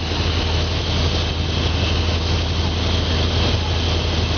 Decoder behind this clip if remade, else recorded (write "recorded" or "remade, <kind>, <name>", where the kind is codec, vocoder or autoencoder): recorded